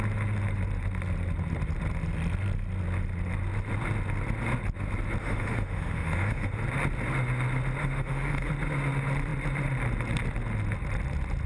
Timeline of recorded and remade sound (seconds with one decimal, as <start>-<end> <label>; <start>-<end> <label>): 0.0-5.2 recorded; 5.2-6.6 remade; 6.6-7.8 recorded; 7.8-8.5 remade; 8.5-11.5 recorded